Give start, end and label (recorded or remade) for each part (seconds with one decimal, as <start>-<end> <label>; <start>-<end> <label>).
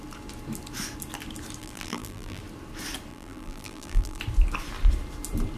0.0-1.6 recorded; 1.6-2.4 remade; 2.4-3.1 recorded; 3.1-4.2 remade; 4.2-5.6 recorded